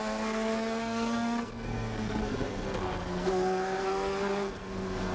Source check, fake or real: fake